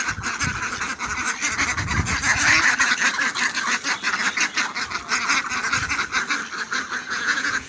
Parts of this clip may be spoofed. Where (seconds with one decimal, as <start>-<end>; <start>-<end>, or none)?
7.0-7.7